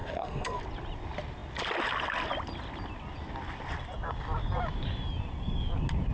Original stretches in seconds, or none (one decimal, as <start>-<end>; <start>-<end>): 0.6-6.1